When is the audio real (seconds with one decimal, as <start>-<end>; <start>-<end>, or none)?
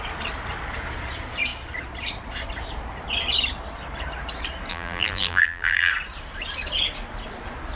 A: 0.0-4.7; 5.9-7.8